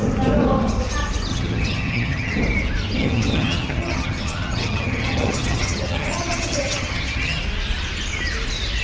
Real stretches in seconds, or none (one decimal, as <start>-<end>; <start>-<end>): 0.0-1.3; 2.4-3.0; 7.4-8.8